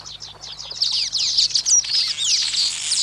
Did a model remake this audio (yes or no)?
no